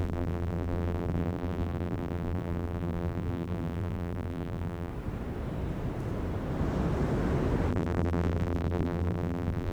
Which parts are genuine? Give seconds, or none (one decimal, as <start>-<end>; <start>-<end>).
4.9-7.7